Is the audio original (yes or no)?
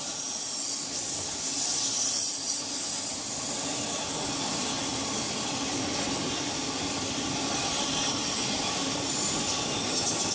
yes